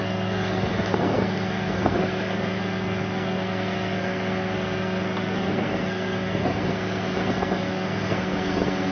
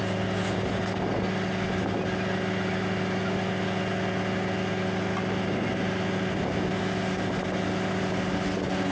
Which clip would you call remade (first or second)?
first